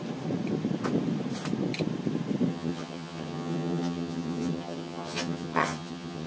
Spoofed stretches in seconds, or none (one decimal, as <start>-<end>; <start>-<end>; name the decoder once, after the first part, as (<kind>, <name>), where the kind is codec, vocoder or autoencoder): 2.5-6.3 (vocoder, HiFi-GAN)